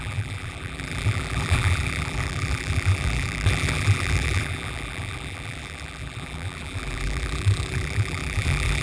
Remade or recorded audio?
remade